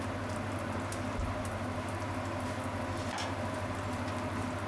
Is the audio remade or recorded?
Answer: recorded